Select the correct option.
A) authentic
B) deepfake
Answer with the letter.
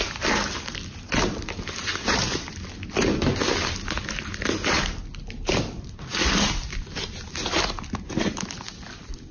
A